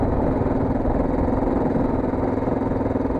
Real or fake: real